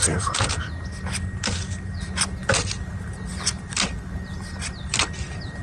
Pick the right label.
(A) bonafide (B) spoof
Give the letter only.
A